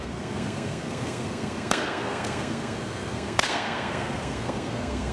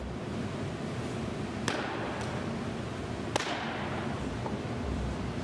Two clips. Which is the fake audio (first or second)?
first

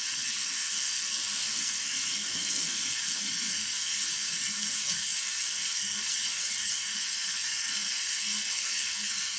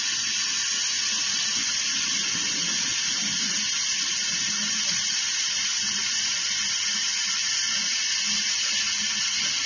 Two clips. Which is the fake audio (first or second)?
first